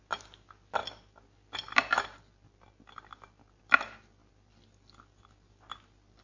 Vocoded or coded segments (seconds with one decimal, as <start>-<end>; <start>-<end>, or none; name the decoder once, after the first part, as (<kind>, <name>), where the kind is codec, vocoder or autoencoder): none